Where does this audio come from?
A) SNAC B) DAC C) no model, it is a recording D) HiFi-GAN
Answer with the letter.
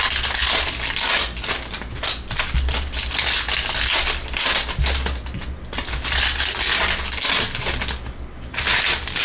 C